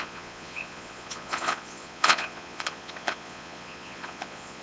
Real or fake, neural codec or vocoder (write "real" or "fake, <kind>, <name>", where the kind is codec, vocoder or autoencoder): fake, vocoder, Vocos